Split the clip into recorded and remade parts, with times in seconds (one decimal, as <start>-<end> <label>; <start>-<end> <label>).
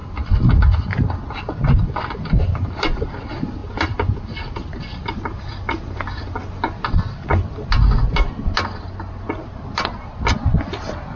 0.0-6.4 remade; 6.4-9.4 recorded; 9.4-11.2 remade